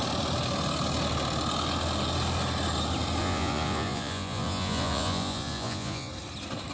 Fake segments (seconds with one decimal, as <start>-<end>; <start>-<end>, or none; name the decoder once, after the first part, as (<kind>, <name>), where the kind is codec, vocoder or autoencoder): 3.2-6.1 (vocoder, Vocos)